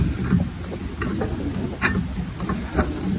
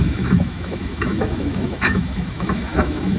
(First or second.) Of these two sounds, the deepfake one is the second